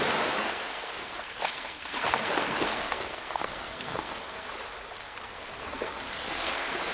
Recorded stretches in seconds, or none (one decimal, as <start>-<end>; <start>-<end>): 0.0-0.4; 4.5-5.0